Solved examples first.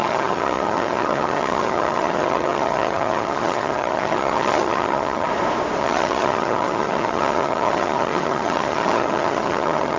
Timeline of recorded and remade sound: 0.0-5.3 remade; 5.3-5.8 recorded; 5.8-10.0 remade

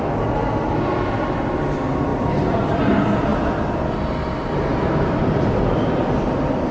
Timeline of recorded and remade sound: 0.0-2.1 recorded; 2.1-2.8 remade; 2.8-4.7 recorded; 4.7-6.2 remade; 6.2-6.7 recorded